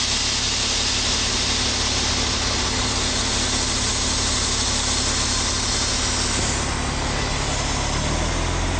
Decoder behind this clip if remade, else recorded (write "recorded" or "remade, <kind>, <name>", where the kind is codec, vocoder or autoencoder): recorded